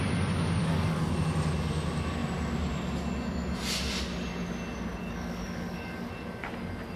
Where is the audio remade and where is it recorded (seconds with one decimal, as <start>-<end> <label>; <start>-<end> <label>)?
0.0-0.6 recorded; 0.6-1.1 remade; 1.1-5.0 recorded; 5.0-6.1 remade; 6.1-7.0 recorded